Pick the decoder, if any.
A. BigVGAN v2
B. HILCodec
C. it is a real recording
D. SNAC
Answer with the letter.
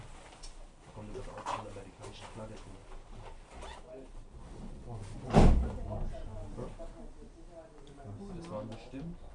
C